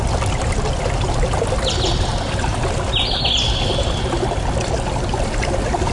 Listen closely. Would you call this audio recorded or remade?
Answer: recorded